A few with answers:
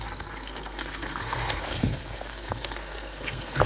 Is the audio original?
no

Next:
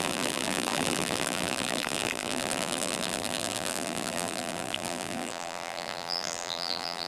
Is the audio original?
no